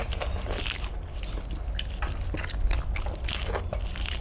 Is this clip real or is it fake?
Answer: real